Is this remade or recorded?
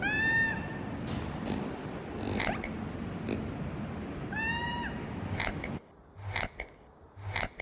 recorded